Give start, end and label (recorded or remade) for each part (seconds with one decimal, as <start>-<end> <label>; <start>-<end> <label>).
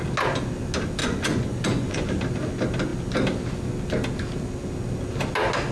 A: 0.0-1.0 recorded; 1.0-2.1 remade; 2.1-5.7 recorded